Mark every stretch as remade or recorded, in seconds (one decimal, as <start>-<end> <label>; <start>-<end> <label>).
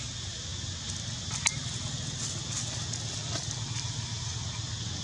0.0-5.0 recorded